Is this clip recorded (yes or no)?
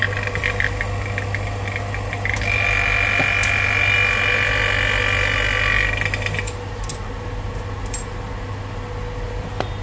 yes